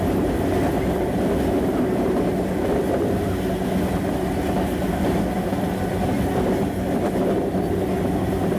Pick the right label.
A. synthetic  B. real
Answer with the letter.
B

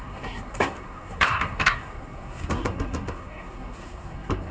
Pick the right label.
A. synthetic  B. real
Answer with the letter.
A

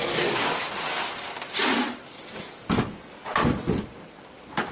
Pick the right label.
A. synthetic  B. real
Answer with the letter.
B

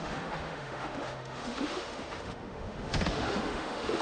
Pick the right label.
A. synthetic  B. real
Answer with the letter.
A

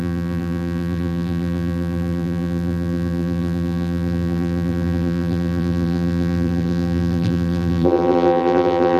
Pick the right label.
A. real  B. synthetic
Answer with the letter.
B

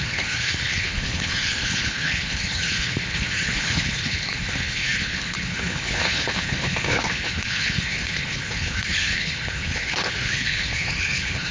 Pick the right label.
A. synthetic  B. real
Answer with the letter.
A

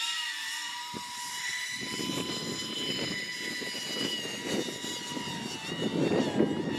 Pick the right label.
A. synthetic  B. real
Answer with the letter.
B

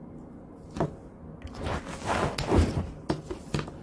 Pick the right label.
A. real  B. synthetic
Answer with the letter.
A